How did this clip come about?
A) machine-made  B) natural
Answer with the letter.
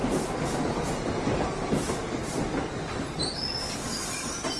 B